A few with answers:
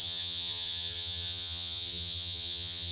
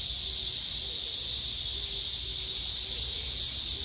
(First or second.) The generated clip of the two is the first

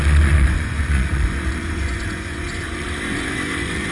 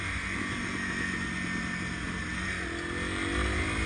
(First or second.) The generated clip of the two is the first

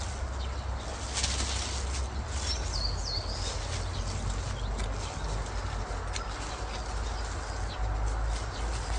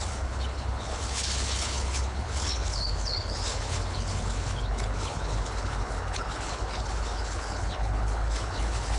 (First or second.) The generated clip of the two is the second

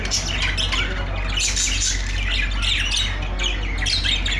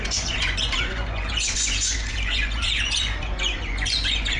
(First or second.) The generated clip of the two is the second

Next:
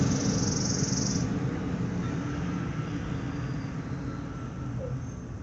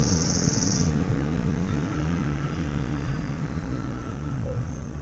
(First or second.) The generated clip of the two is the second